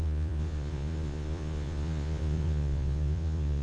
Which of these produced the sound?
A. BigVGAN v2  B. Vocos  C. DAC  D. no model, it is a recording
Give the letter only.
B